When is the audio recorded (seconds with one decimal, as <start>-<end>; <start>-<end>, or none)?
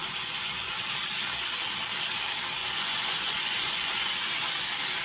0.8-2.6; 4.5-5.0